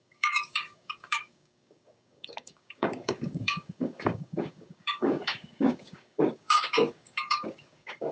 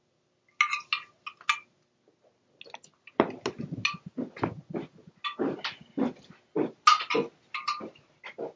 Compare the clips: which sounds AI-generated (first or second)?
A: first